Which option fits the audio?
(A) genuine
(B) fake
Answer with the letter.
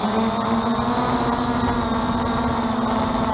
A